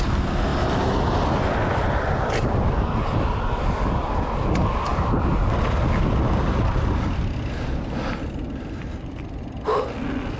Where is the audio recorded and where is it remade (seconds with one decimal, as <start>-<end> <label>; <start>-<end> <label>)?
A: 0.0-10.4 recorded